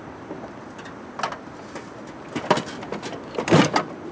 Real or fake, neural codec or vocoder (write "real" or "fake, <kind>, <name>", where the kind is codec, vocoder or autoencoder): real